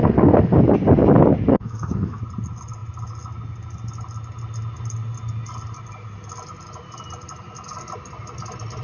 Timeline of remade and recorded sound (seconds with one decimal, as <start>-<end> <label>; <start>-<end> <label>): 0.0-0.6 remade; 0.6-1.5 recorded; 1.5-2.2 remade; 2.2-8.8 recorded